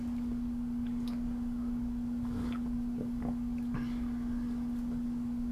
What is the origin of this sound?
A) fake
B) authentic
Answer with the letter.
A